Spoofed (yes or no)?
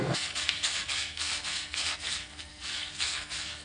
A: yes